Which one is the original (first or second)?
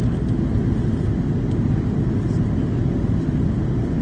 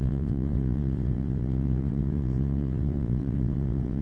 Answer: first